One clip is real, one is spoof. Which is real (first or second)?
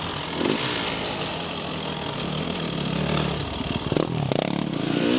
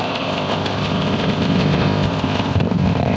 first